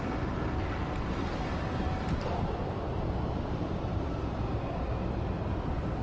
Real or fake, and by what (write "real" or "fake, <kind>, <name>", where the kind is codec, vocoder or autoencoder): fake, vocoder, BigVGAN v2